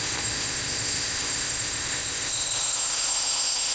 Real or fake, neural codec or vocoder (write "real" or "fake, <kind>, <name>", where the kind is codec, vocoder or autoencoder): fake, codec, ZipCodec